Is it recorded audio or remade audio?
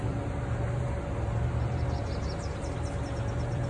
remade